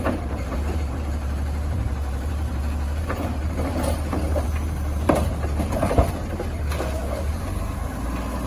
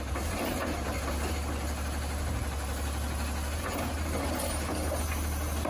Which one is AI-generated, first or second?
first